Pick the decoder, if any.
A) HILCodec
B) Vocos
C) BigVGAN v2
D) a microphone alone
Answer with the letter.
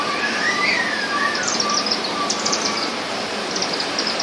C